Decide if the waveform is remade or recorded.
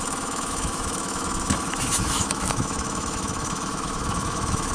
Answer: remade